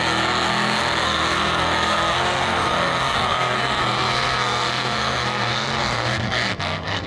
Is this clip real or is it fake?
fake